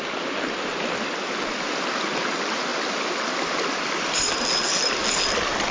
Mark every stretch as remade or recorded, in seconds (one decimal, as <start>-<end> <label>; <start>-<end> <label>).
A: 0.0-5.7 recorded